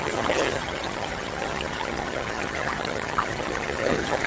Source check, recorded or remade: remade